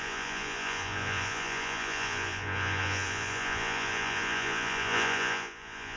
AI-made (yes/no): yes